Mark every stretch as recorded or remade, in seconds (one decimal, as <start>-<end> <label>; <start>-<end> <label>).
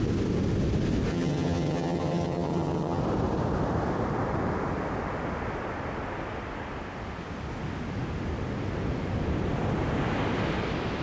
0.0-1.1 recorded; 1.1-3.0 remade; 3.0-11.0 recorded